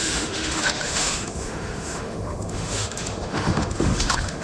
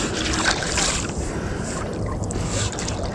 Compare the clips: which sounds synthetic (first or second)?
first